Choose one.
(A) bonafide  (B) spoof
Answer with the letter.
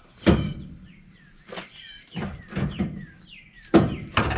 B